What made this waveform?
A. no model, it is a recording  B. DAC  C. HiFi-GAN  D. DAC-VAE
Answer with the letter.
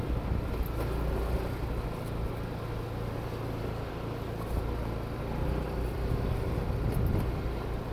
A